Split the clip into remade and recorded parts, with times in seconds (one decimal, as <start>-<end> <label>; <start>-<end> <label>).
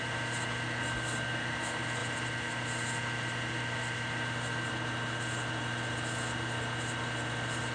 0.0-7.7 recorded